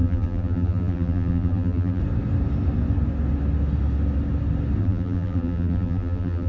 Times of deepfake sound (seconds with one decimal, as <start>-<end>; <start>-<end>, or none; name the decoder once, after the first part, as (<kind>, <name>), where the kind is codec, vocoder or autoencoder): 0.0-2.0 (vocoder, BigVGAN v2); 4.8-6.5